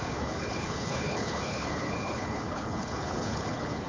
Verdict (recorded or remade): remade